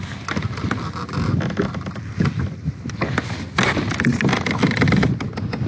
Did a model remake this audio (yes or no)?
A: no